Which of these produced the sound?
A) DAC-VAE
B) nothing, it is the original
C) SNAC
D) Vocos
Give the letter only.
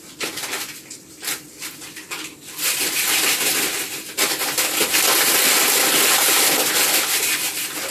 B